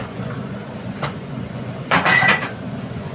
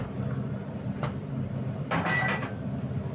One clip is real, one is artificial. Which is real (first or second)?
second